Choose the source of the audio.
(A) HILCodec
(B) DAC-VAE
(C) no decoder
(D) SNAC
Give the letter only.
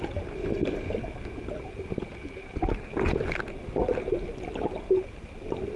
C